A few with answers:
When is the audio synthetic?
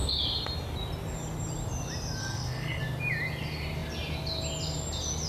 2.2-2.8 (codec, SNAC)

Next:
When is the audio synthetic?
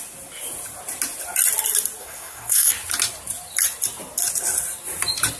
2.0-2.7 (codec, SNAC)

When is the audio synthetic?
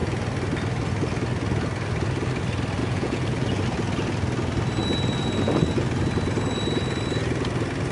2.8-3.6 (vocoder, Vocos)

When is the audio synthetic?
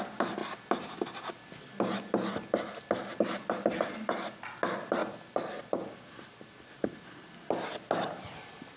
none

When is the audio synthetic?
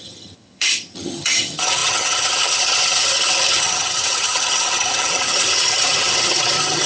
0.0-6.9 (vocoder, HiFi-GAN)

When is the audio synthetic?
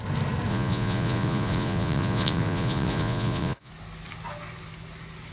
0.5-3.7 (vocoder, Vocos)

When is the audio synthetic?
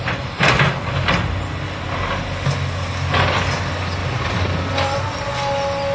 4.0-4.7 (vocoder, BigVGAN v2)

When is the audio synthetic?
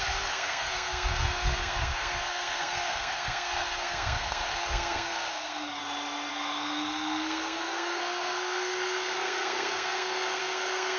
0.0-5.8 (codec, SNAC); 6.3-11.0